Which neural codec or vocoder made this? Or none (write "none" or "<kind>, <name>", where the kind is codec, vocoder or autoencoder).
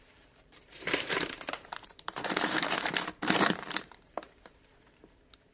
vocoder, BigVGAN v2